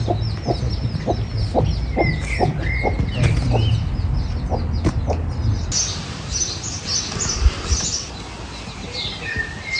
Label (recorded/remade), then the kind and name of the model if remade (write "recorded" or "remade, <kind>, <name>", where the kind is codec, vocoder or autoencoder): recorded